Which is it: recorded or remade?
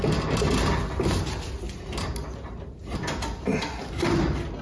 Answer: recorded